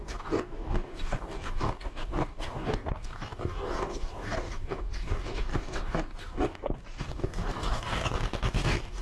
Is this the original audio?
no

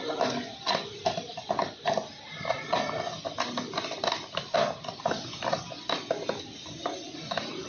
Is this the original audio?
yes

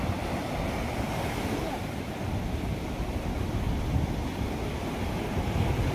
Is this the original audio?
yes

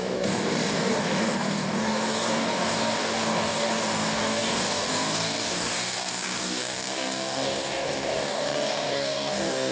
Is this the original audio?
no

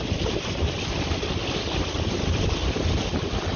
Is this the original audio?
yes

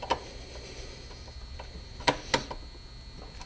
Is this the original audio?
yes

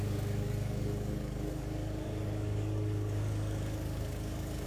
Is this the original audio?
no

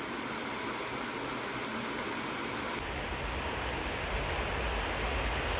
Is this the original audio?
yes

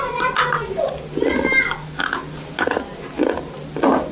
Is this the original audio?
yes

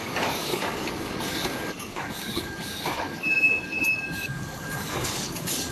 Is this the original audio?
no